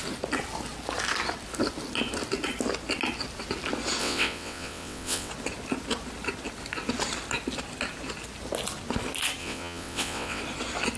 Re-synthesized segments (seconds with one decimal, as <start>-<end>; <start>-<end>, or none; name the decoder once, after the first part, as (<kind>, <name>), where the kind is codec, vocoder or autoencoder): 4.0-5.3 (vocoder, WaveNeXt); 9.4-10.4